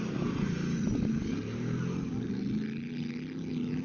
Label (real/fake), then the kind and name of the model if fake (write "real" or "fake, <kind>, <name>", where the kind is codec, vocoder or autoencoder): real